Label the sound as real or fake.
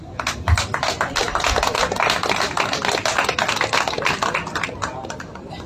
real